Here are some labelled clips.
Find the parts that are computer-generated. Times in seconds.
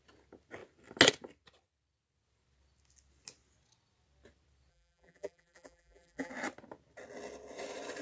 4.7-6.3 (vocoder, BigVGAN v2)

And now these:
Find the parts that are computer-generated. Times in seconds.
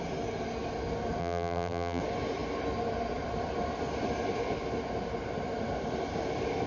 1.2-2.0 (vocoder, BigVGAN v2)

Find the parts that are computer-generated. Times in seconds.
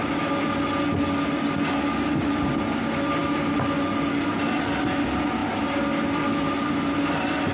none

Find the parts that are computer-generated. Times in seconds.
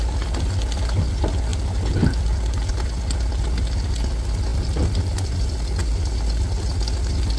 4.5-6.2 (vocoder, BigVGAN v2)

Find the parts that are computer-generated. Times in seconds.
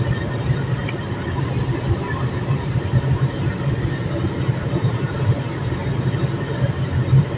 0.0-0.8 (vocoder, BigVGAN v2); 1.8-3.5; 4.7-5.8; 6.5-7.4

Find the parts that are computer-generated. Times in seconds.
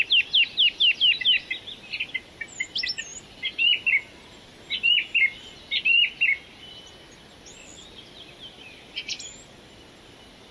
none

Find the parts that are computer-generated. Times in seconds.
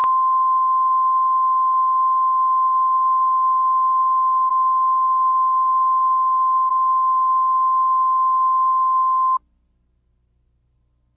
none